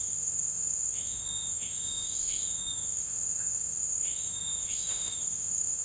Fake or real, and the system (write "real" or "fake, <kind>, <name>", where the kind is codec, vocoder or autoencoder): fake, autoencoder, DAC-VAE